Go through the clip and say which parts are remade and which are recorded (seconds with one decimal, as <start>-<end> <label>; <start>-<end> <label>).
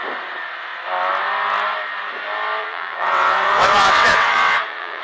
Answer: 0.0-2.6 recorded; 2.6-5.0 remade